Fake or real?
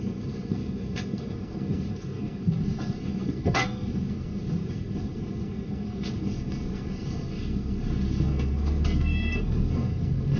fake